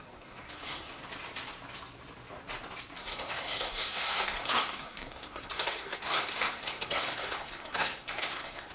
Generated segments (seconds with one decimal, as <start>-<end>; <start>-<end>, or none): 0.0-1.0; 3.0-8.7